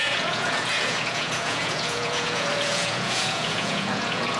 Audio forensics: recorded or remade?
remade